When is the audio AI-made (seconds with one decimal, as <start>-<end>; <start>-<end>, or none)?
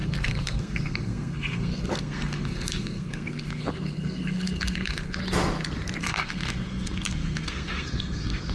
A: 0.0-5.2; 6.0-8.5